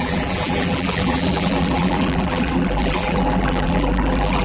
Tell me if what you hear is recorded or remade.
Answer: remade